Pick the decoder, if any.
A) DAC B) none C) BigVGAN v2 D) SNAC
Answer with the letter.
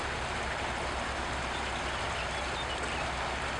B